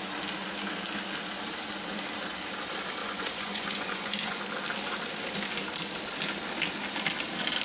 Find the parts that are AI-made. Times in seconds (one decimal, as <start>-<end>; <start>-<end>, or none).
3.0-4.4